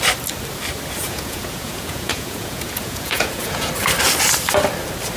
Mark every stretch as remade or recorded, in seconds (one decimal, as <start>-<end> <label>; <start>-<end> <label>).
0.0-1.0 recorded; 1.0-3.7 remade; 3.7-5.2 recorded